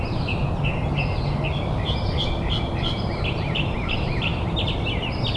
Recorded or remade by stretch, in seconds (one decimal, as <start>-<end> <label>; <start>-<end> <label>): 0.0-0.4 remade; 0.4-2.0 recorded; 2.0-4.3 remade; 4.3-5.4 recorded